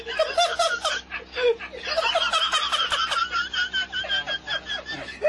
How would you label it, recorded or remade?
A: recorded